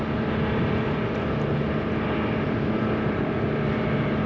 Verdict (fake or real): real